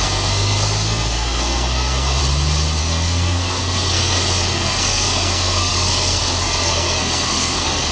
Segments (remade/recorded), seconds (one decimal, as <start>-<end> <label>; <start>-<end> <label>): 0.0-2.2 remade; 2.2-2.8 recorded; 2.8-7.9 remade